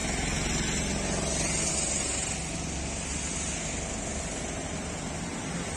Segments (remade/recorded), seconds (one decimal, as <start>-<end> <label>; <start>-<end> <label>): 0.0-5.8 recorded